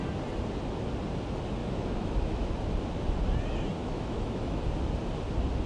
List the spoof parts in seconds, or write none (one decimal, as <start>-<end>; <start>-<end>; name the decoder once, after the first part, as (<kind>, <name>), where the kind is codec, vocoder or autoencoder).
1.6-2.5 (autoencoder, DAC-VAE); 3.8-4.6